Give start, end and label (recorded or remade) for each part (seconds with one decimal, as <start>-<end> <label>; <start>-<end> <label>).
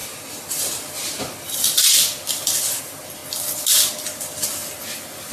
0.0-3.2 remade; 3.2-4.0 recorded; 4.0-4.6 remade; 4.6-5.3 recorded